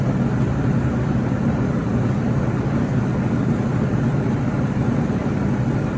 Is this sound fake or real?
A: real